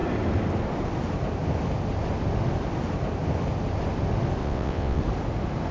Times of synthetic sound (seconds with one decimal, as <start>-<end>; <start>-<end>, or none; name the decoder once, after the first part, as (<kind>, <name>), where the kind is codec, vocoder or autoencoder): 4.4-5.0 (vocoder, WaveNeXt)